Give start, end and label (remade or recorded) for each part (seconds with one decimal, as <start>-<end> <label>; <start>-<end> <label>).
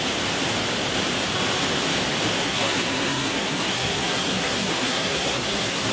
0.0-2.4 recorded; 2.4-5.9 remade